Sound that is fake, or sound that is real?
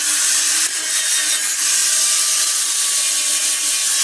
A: real